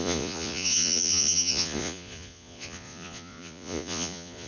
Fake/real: fake